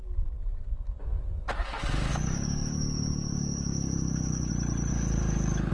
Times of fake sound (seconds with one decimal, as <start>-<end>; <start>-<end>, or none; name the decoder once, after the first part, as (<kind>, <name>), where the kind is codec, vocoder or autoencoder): 2.1-4.5 (codec, DAC); 4.9-5.7